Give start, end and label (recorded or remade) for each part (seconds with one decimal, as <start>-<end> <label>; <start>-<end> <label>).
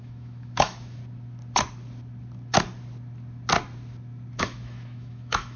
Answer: 0.0-1.0 remade; 1.0-4.4 recorded; 4.4-5.6 remade